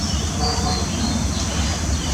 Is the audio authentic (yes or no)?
yes